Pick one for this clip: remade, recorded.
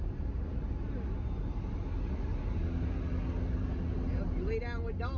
recorded